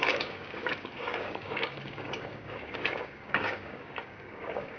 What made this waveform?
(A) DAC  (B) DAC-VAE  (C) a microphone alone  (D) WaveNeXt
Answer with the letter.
A